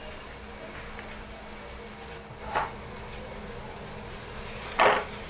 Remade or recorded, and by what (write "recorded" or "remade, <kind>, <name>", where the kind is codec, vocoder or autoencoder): recorded